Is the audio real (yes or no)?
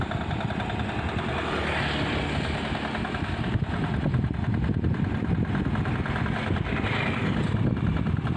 yes